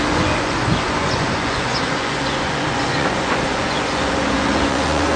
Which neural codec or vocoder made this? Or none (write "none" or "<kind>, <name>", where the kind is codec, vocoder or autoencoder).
vocoder, Vocos